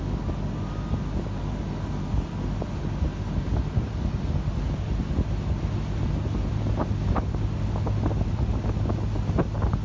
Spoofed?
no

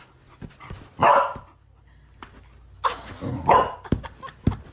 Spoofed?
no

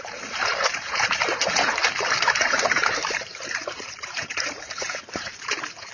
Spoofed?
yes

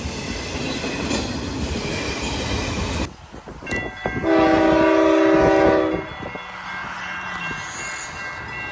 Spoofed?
no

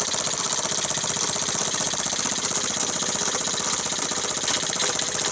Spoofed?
yes